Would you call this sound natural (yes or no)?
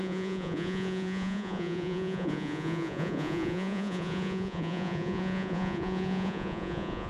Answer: no